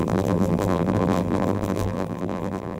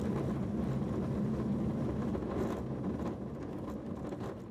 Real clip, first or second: second